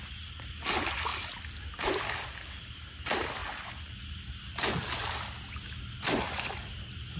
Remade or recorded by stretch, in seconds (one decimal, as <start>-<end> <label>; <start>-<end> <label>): 0.0-7.2 recorded